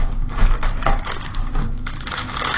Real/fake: real